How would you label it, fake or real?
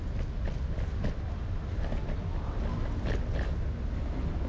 real